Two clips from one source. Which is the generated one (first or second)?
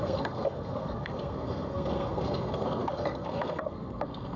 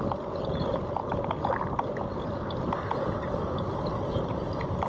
first